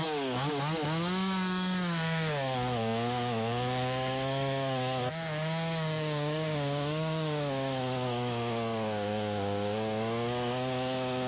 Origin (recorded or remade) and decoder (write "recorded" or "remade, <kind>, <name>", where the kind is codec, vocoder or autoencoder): remade, codec, DAC